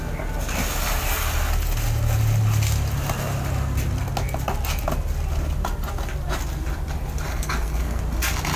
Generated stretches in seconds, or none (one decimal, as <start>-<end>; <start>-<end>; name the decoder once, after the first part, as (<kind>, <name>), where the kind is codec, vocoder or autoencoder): 7.3-8.0 (codec, SNAC)